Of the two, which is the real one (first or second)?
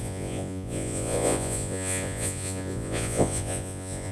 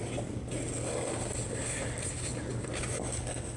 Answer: second